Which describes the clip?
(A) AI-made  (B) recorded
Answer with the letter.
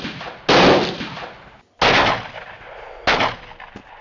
B